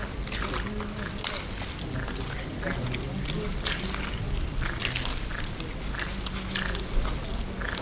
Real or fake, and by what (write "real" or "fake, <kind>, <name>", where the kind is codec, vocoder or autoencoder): real